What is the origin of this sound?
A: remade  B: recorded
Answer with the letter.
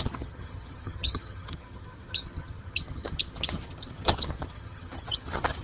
A